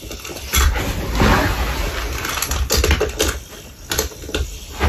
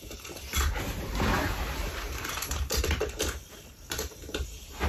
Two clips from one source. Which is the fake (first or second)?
second